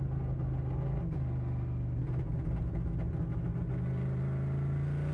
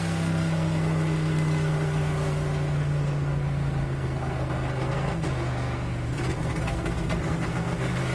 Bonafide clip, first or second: first